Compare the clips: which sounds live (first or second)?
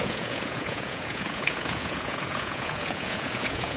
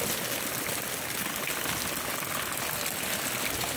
second